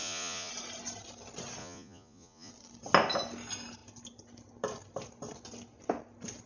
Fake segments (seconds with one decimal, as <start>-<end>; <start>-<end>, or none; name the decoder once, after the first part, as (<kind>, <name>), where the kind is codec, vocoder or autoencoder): 0.0-0.5 (vocoder, Vocos); 1.6-2.5